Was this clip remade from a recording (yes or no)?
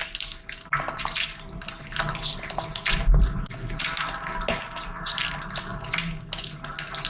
no